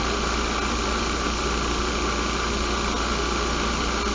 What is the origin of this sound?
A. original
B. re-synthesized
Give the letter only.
A